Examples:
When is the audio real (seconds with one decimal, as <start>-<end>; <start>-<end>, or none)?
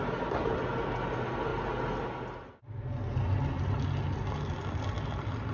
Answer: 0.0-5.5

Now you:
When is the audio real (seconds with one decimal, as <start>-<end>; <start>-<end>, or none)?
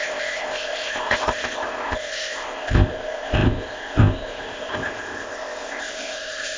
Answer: none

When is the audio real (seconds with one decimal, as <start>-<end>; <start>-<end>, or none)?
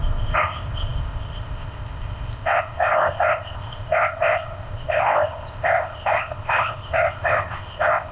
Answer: none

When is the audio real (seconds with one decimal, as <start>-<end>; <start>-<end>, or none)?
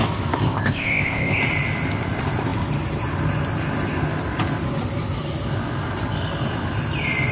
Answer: 0.0-0.4; 1.4-7.3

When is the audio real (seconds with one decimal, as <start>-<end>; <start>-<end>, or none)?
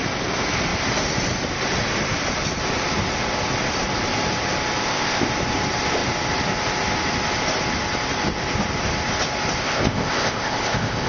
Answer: 0.0-4.8; 5.3-9.6